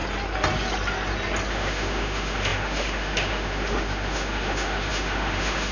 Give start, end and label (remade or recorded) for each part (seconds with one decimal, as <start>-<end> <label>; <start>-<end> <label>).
0.0-1.5 recorded; 1.5-5.7 remade